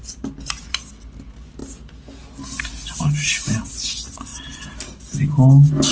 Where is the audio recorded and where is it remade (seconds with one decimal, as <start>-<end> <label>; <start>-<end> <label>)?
0.0-5.9 recorded